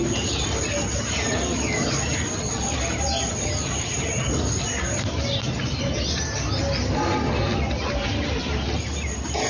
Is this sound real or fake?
real